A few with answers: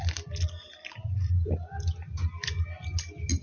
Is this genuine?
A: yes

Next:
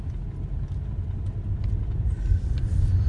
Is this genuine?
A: yes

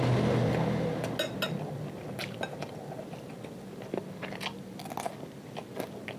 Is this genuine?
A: yes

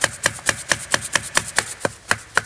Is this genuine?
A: yes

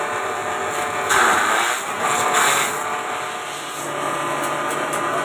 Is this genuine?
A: yes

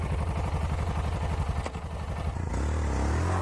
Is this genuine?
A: yes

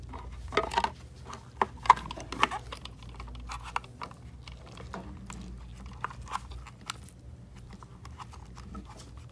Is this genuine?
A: yes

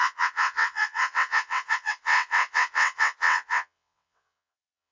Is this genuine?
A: no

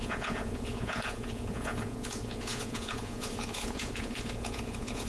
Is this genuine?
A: no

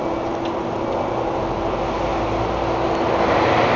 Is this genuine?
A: yes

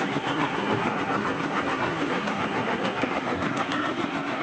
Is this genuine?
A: no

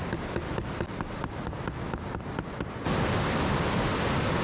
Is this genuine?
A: yes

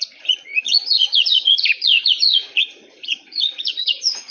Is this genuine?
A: no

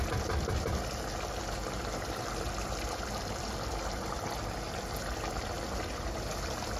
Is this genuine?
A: yes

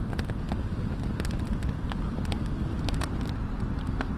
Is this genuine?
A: yes